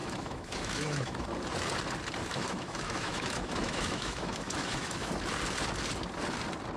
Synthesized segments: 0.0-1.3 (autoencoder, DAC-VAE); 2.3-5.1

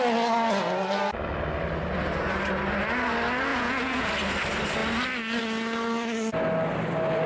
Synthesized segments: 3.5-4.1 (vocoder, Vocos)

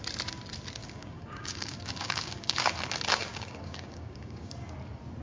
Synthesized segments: 0.8-2.7 (codec, DAC); 3.3-4.5

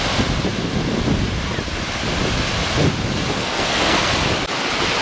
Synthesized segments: 3.4-4.1 (codec, SNAC)